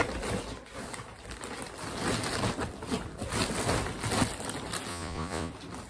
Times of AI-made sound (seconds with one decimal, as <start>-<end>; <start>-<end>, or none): 4.9-5.5